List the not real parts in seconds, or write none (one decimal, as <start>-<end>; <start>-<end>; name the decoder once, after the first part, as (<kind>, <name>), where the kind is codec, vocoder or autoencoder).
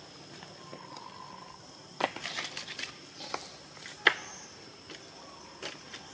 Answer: none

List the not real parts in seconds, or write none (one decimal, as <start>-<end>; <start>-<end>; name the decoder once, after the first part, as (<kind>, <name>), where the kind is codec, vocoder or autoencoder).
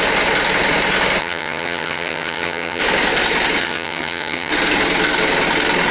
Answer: 1.2-2.8 (vocoder, HiFi-GAN); 3.6-4.5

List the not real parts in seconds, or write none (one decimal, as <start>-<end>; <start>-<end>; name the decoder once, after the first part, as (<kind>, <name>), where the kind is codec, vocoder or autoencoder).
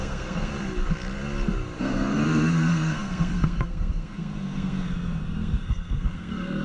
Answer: 0.0-0.5 (codec, SNAC); 1.8-6.6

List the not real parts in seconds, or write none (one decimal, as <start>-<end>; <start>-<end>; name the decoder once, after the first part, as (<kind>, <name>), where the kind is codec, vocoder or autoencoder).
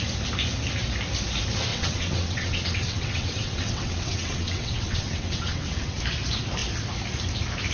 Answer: 1.7-6.0 (vocoder, WaveNeXt)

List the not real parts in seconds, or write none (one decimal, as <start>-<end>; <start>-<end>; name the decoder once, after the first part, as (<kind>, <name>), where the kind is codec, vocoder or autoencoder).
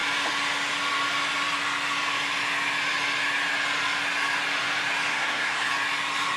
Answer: 5.1-5.7 (codec, SNAC)